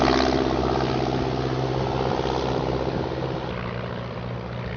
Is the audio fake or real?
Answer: real